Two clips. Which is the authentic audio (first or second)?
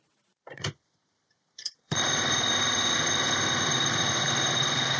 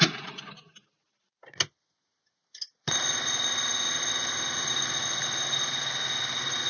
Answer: second